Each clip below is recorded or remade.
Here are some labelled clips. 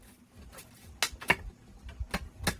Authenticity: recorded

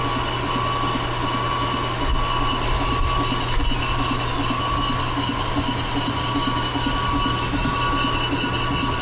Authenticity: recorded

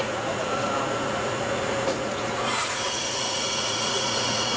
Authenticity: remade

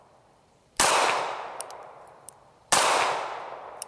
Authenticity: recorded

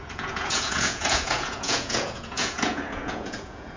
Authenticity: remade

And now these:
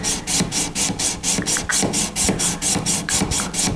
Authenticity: recorded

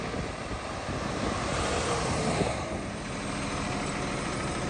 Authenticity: recorded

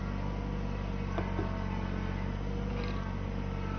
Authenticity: recorded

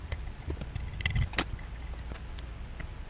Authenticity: recorded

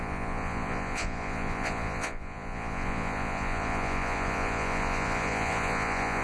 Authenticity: remade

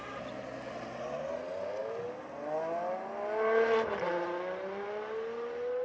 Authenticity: recorded